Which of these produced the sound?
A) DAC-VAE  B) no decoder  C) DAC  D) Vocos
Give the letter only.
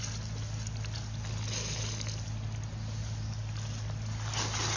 B